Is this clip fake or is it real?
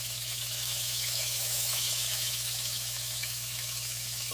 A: fake